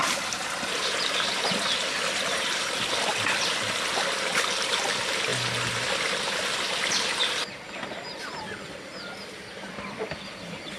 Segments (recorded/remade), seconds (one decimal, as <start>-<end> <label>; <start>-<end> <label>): 0.0-10.8 recorded